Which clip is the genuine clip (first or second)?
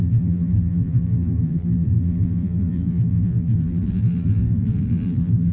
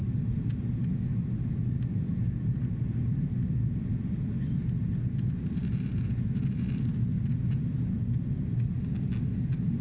second